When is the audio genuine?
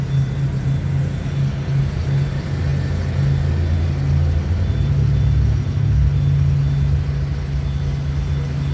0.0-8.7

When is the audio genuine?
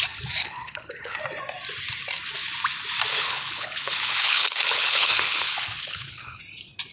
0.0-0.4; 1.2-3.1; 6.4-6.9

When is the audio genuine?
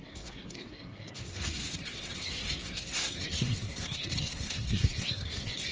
none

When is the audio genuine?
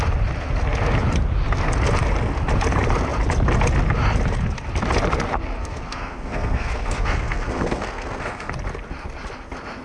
0.0-5.6; 8.5-9.8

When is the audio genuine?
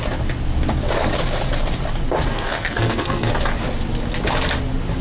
0.0-2.3; 3.3-5.0